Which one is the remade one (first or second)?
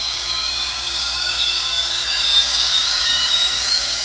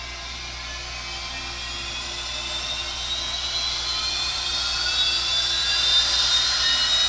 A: first